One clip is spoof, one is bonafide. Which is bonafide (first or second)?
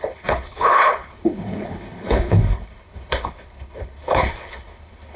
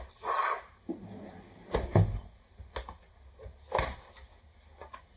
second